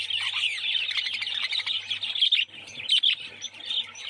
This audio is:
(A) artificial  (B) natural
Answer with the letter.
B